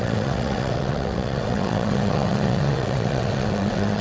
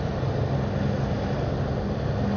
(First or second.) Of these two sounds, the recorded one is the second